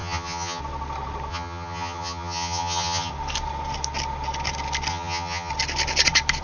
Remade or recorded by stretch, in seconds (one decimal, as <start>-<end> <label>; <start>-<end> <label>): 0.0-0.6 remade; 0.6-1.3 recorded; 1.3-3.1 remade; 3.1-4.9 recorded; 4.9-5.5 remade; 5.5-6.4 recorded